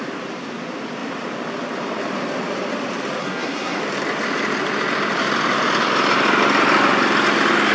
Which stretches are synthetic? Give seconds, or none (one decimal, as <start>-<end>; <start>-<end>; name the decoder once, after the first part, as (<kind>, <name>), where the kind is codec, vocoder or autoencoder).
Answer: 3.2-3.8 (codec, SNAC)